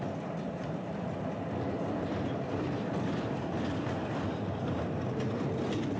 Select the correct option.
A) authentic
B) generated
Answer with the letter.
A